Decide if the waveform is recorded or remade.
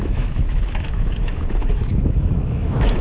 remade